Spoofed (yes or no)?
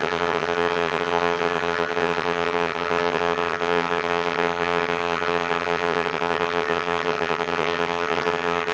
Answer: yes